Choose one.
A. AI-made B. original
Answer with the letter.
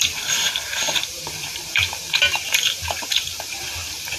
A